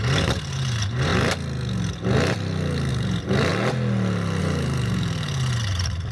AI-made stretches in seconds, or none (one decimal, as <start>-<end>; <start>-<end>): 0.0-1.1; 2.9-3.5; 4.4-6.1